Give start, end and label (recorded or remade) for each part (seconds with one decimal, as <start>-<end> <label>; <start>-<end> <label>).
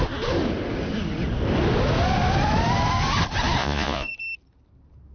0.0-3.6 recorded; 3.6-4.1 remade; 4.1-5.1 recorded